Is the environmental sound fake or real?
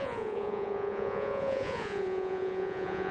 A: fake